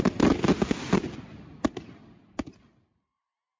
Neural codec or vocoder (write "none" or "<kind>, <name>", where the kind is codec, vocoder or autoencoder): none